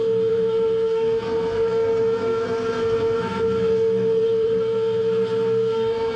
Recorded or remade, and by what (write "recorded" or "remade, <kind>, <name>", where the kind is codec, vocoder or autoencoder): remade, codec, SNAC